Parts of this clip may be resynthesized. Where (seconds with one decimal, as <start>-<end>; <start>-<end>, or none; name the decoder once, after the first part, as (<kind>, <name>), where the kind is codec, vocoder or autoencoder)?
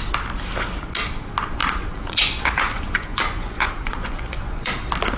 1.6-4.7 (vocoder, Vocos)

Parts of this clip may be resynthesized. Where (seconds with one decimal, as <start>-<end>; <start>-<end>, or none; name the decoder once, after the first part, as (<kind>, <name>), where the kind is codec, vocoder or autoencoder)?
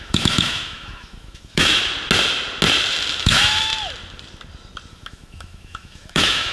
0.0-1.8 (autoencoder, DAC-VAE); 3.2-3.7; 4.9-6.5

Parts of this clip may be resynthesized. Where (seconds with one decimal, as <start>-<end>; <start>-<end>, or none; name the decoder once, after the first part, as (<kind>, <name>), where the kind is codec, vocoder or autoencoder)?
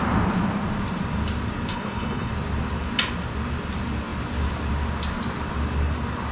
1.7-2.3 (codec, HILCodec)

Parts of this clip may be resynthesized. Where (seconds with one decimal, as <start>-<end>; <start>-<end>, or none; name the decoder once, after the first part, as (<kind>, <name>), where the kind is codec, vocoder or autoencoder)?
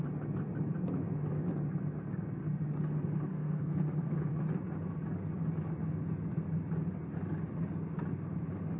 3.3-4.3 (codec, SNAC)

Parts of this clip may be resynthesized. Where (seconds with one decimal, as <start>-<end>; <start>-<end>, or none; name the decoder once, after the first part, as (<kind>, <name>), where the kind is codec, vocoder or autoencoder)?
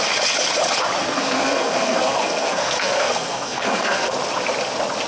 1.0-4.1 (codec, SNAC)